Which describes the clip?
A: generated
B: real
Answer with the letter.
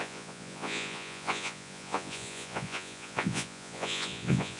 A